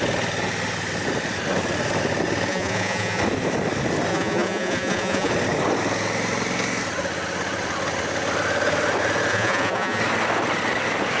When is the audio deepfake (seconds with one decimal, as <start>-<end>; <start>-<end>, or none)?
2.5-3.2; 4.1-5.3; 9.3-10.0